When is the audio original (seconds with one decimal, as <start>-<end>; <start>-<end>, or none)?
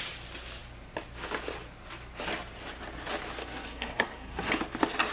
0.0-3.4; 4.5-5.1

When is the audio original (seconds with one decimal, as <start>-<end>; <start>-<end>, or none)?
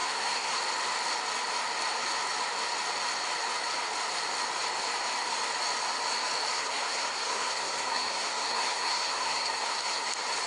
0.6-6.5; 10.1-10.5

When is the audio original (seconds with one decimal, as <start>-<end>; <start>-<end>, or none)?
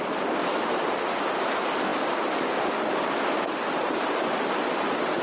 0.0-5.2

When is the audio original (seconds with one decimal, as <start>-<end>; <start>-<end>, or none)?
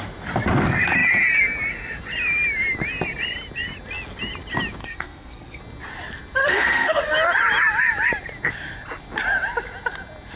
0.0-4.8; 5.6-6.4; 7.0-10.4